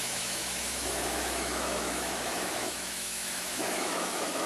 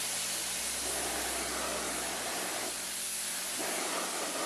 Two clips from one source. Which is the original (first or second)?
second